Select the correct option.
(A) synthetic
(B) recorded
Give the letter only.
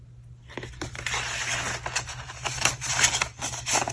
B